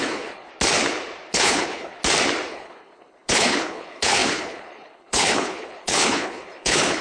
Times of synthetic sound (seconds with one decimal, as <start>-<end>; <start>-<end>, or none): 0.0-0.5; 1.3-2.0; 2.5-7.0